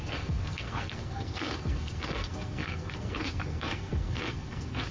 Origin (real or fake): fake